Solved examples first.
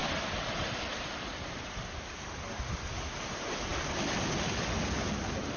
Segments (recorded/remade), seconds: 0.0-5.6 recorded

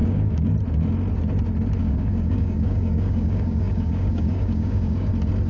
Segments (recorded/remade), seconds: 0.0-0.5 remade; 0.5-1.8 recorded; 1.8-5.1 remade; 5.1-5.5 recorded

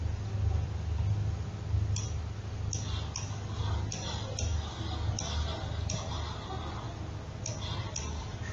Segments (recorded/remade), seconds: 0.0-8.5 recorded